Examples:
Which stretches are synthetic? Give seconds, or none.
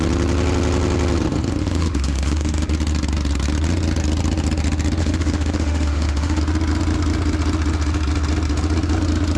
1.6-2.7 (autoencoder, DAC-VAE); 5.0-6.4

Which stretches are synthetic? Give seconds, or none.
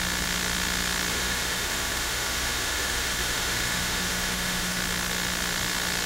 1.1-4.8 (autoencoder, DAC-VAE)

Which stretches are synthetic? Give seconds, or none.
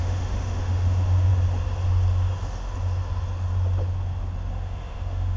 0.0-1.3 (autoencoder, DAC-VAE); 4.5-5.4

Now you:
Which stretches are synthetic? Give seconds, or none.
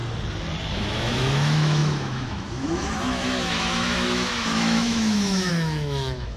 0.7-6.4 (autoencoder, DAC-VAE)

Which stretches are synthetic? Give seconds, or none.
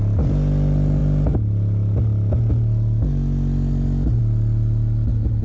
none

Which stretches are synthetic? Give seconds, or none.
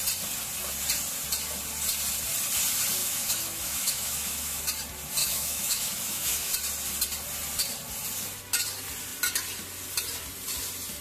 3.0-4.6 (autoencoder, DAC-VAE); 5.2-6.5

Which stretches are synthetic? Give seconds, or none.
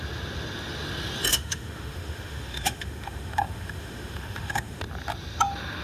1.3-4.8 (autoencoder, DAC-VAE)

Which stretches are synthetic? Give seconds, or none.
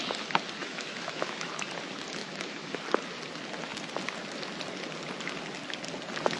0.6-1.5 (autoencoder, DAC-VAE); 2.2-2.8